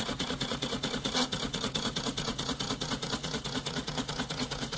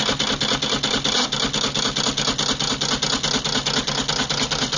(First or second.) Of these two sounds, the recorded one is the second